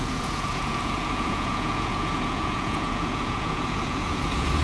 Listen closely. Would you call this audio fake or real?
fake